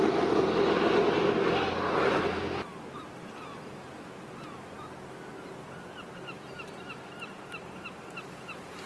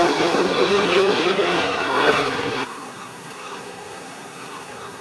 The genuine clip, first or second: first